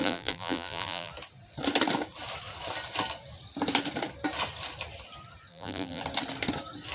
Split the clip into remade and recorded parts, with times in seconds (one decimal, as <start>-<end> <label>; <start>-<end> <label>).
0.0-1.1 remade; 1.1-5.5 recorded; 5.5-6.0 remade; 6.0-6.9 recorded